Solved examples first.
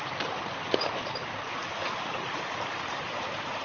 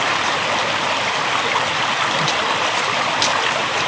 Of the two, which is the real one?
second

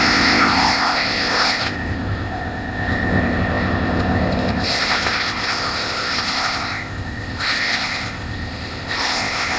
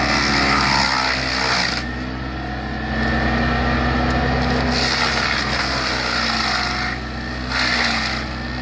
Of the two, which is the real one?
second